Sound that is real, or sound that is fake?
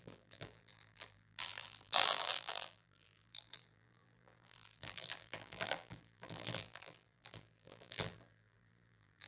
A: fake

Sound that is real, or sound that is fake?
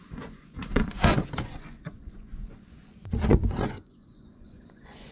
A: fake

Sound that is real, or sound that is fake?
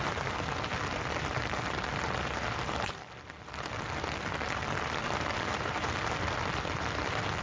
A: fake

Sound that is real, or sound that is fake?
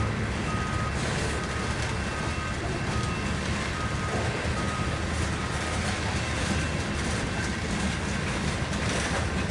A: real